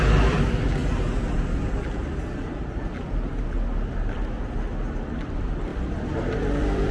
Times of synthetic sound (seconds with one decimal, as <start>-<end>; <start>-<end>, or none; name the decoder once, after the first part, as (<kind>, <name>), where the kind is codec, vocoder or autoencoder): 0.0-0.8 (vocoder, BigVGAN v2); 4.9-6.9